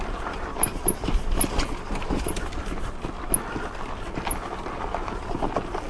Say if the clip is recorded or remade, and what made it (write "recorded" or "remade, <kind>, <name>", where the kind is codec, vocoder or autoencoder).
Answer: recorded